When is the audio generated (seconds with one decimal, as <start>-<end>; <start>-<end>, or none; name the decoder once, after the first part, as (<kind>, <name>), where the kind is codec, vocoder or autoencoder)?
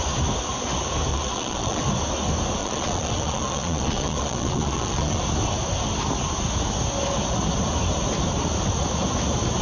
1.1-1.8 (vocoder, Vocos); 2.6-5.2